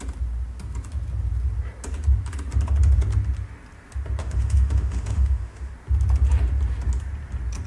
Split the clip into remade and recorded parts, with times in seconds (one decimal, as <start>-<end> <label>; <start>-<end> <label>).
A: 0.0-4.2 recorded; 4.2-5.7 remade; 5.7-7.7 recorded